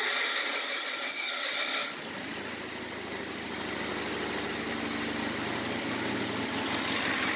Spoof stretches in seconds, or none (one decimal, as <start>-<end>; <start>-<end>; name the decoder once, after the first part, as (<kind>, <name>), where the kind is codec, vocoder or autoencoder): none